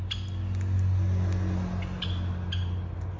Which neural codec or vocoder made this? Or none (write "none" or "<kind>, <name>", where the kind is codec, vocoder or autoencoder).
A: none